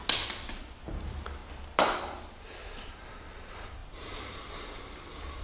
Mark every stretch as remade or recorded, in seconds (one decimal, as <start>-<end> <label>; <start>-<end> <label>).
0.0-5.4 recorded